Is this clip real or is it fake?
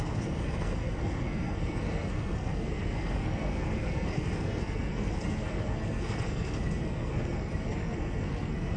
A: fake